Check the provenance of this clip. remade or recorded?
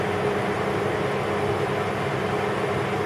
recorded